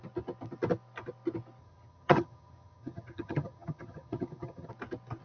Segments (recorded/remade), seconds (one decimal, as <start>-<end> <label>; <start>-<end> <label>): 0.0-1.6 recorded; 1.6-4.7 remade; 4.7-5.2 recorded